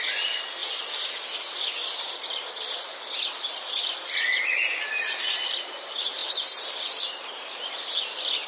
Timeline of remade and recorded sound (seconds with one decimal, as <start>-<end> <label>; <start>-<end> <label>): 0.0-0.6 recorded; 0.6-1.2 remade; 1.2-8.5 recorded